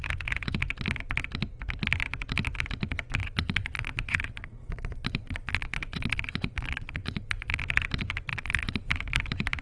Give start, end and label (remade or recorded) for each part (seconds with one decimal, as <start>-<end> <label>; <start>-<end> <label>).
0.0-3.2 recorded; 3.2-7.6 remade; 7.6-8.3 recorded; 8.3-8.9 remade; 8.9-9.6 recorded